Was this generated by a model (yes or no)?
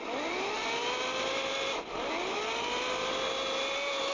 no